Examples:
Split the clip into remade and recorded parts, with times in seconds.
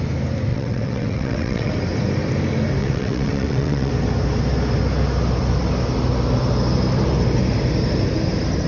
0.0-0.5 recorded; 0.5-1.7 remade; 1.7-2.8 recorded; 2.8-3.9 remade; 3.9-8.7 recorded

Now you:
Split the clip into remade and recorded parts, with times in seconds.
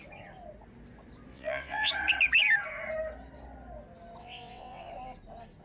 0.0-1.3 recorded; 1.3-1.9 remade; 1.9-4.2 recorded; 4.2-4.9 remade; 4.9-5.6 recorded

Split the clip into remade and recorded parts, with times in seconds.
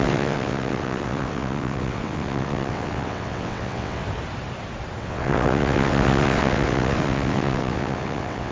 0.0-4.0 remade; 4.0-5.0 recorded; 5.0-8.5 remade